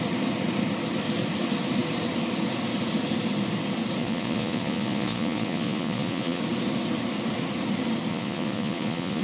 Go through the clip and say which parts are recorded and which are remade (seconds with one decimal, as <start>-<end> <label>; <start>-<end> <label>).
0.0-4.0 recorded; 4.0-6.4 remade; 6.4-8.1 recorded; 8.1-9.2 remade